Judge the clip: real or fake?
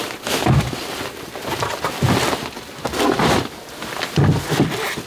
real